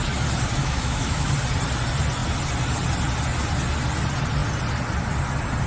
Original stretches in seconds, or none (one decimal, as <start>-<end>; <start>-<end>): 0.0-0.6; 1.3-5.7